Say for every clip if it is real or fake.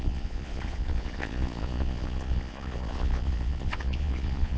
fake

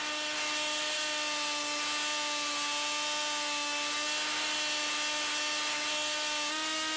real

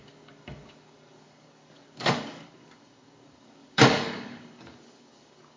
fake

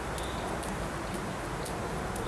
real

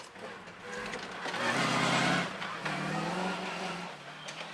real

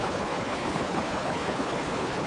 fake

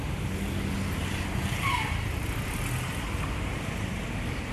real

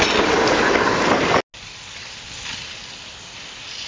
real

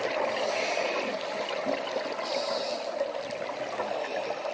real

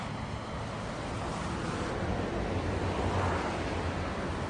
real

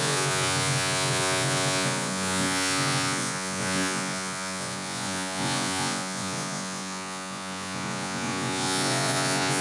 fake